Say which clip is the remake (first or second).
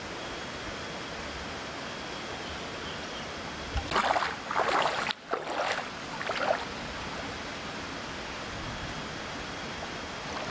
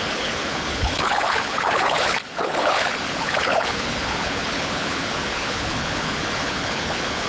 second